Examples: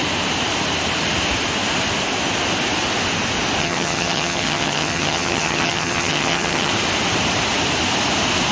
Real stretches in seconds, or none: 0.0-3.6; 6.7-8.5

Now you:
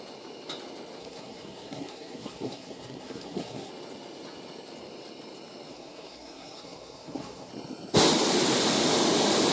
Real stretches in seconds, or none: 0.0-1.0; 3.7-5.7; 7.5-9.5

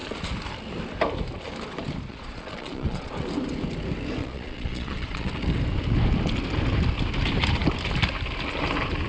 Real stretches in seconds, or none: 0.0-2.1; 3.1-4.2; 5.3-9.1

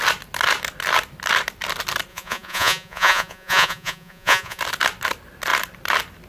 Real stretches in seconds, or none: 0.0-2.1; 4.6-6.3

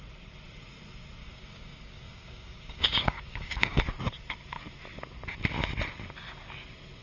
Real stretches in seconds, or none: 0.0-1.2; 3.8-7.0

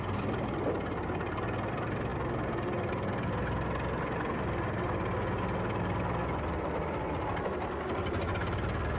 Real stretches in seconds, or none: 0.0-9.0

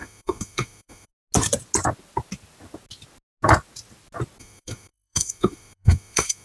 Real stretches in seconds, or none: 1.1-4.4